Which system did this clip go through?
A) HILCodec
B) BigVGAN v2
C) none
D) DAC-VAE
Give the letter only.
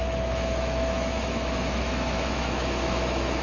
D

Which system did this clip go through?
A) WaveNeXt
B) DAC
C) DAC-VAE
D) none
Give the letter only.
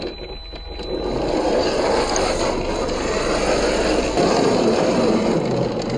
D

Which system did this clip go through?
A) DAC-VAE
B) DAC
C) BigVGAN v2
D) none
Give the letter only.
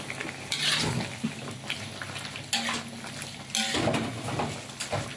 D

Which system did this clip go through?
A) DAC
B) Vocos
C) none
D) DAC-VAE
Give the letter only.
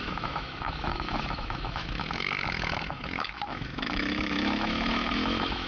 D